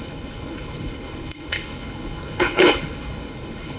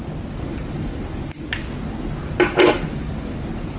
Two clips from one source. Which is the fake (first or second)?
first